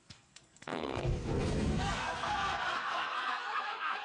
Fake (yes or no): yes